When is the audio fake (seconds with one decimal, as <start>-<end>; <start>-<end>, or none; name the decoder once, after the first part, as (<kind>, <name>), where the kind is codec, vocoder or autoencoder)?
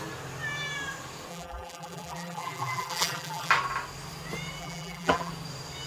1.3-3.5 (vocoder, BigVGAN v2); 4.6-5.3